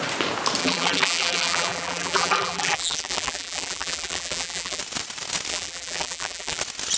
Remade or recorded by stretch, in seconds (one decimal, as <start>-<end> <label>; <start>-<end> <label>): 0.0-0.6 recorded; 0.6-4.8 remade; 4.8-5.5 recorded; 5.5-6.6 remade; 6.6-7.0 recorded